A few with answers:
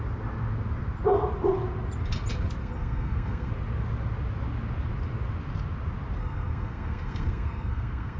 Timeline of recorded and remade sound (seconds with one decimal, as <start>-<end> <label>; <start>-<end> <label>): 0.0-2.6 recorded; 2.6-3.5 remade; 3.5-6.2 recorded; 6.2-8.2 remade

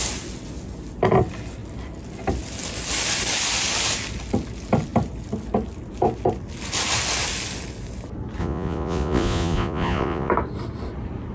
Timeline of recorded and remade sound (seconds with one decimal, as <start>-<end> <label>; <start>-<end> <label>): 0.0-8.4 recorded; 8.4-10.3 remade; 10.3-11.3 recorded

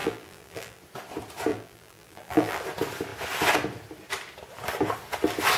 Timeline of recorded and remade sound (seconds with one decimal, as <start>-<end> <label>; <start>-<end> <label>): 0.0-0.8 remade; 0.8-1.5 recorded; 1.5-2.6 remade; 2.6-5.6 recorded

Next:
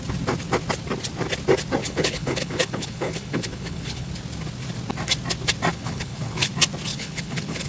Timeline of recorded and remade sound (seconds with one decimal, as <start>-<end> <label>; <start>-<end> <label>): 0.0-1.8 recorded; 1.8-4.1 remade; 4.1-5.7 recorded; 5.7-6.5 remade; 6.5-6.9 recorded; 6.9-7.7 remade